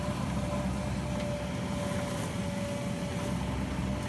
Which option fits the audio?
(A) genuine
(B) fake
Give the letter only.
A